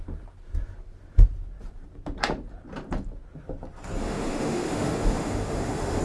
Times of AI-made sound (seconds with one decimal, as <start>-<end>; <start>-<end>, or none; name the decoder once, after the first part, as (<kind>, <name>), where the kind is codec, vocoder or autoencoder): 4.0-6.0 (autoencoder, DAC-VAE)